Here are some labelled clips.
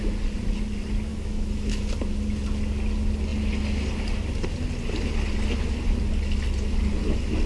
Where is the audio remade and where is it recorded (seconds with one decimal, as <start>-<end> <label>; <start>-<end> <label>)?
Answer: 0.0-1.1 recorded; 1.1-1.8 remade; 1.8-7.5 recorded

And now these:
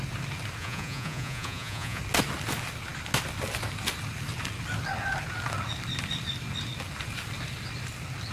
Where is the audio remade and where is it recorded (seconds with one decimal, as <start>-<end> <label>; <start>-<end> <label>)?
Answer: 0.0-0.6 recorded; 0.6-2.0 remade; 2.0-8.3 recorded

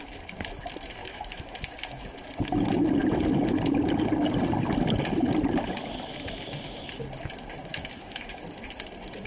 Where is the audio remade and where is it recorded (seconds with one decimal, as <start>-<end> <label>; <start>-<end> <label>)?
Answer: 0.0-1.0 recorded; 1.0-2.0 remade; 2.0-7.7 recorded; 7.7-8.4 remade; 8.4-9.3 recorded